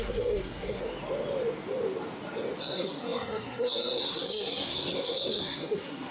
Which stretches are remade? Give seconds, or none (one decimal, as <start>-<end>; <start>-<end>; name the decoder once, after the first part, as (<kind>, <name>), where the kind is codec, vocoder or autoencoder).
0.0-0.8 (codec, SNAC); 2.6-6.1